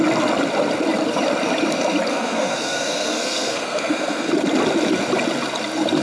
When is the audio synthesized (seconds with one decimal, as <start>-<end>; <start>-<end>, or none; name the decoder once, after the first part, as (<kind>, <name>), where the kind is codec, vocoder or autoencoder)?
2.1-4.3 (codec, SNAC)